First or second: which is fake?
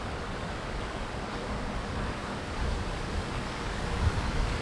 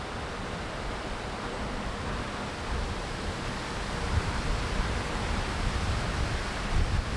first